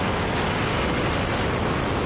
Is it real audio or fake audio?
real